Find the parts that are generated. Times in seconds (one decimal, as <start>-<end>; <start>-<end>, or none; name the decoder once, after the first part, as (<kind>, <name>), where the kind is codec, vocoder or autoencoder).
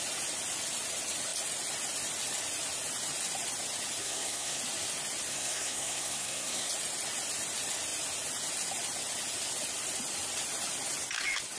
4.0-4.6 (codec, SNAC); 5.3-6.7